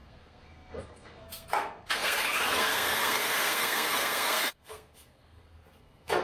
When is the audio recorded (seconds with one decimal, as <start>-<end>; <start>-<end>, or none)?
none